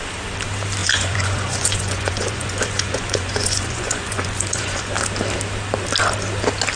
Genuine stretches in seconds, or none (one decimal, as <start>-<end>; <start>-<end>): 0.0-0.8; 4.9-6.8